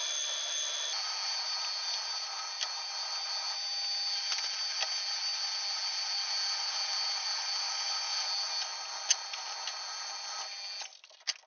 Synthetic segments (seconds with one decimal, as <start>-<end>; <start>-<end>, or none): none

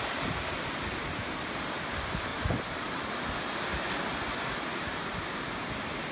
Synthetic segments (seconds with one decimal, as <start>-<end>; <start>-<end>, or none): none